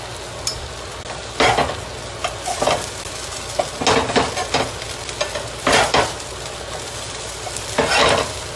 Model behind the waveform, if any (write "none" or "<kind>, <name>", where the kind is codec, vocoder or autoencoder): none